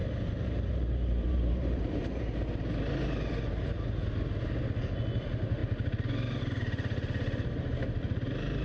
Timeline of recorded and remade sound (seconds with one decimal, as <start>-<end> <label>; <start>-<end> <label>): 0.0-2.4 remade; 2.4-8.6 recorded